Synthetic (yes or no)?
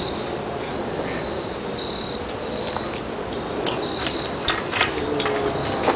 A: no